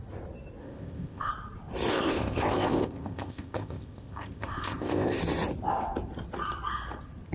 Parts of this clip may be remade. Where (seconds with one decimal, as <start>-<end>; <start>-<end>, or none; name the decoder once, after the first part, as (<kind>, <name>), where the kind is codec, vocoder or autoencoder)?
0.6-1.3 (codec, ZipCodec); 1.9-5.2